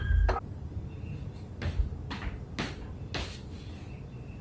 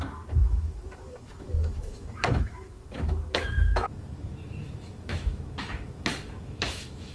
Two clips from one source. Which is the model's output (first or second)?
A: second